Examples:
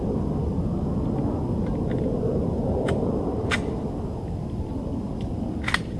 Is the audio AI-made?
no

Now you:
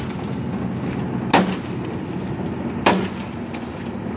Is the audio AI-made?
no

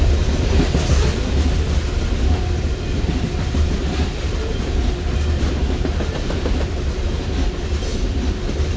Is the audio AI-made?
no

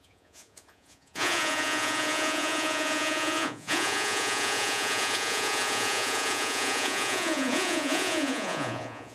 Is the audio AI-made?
yes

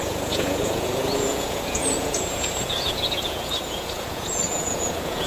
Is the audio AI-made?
yes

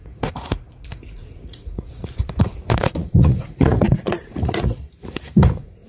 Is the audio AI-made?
yes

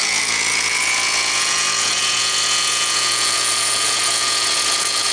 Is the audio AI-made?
yes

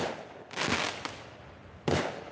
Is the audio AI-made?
no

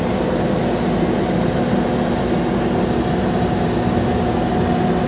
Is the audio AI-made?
no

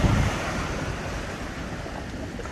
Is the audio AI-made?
no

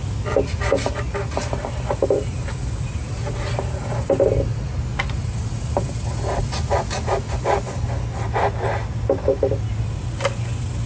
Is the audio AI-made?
no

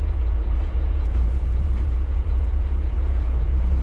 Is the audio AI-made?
yes